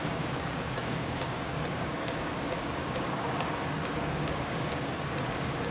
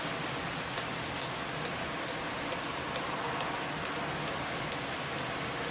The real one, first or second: second